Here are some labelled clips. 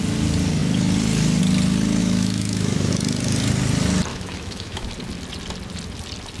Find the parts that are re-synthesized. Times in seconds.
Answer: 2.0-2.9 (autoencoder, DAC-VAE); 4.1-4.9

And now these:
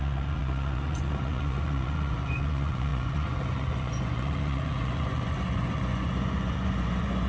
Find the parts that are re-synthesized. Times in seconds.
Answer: 0.0-7.3 (vocoder, Vocos)

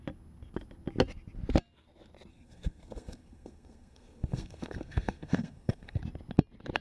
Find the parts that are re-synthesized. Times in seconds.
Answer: 2.3-6.0 (codec, SNAC)

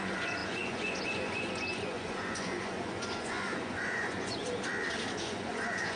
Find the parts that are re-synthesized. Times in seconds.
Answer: 0.0-4.4 (vocoder, Vocos); 5.1-6.0

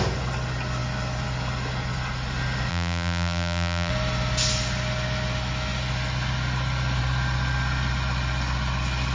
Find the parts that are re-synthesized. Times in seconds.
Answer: 2.7-3.9 (vocoder, BigVGAN v2)

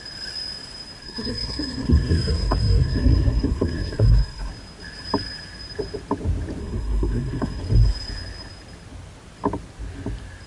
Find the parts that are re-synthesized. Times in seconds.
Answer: 1.0-4.5 (codec, SNAC); 6.6-7.6

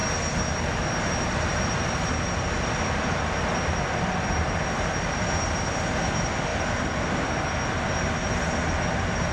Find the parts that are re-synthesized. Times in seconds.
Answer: none